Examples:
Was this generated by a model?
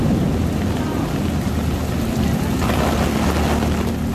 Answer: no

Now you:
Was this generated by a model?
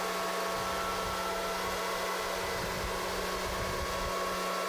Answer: no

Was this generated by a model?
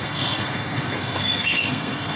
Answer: yes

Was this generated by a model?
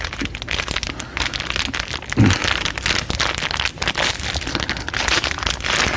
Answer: no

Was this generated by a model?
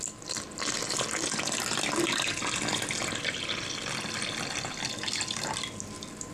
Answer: no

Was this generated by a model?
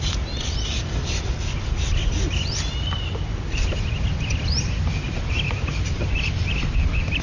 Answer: no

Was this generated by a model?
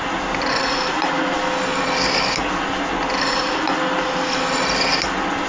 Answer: no